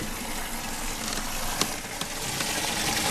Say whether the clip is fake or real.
real